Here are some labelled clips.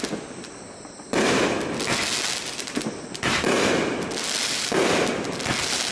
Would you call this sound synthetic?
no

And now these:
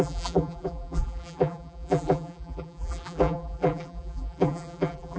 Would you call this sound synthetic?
yes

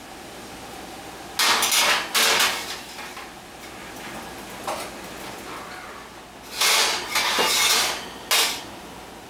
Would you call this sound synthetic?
no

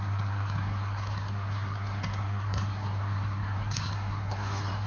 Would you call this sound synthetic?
yes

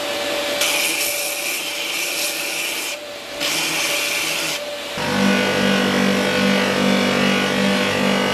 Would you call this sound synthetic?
no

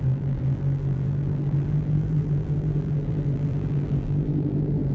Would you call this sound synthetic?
yes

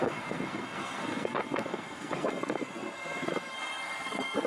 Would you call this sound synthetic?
yes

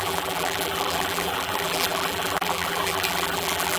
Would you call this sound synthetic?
yes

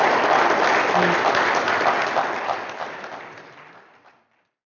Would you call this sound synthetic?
no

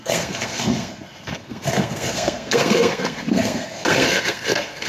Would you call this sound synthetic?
yes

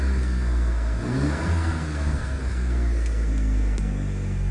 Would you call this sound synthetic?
yes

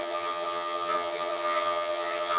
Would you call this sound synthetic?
yes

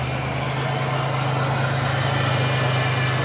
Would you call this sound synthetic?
no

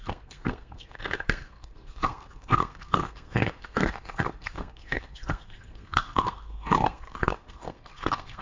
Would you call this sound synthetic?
yes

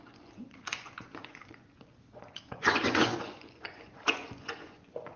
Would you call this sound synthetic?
yes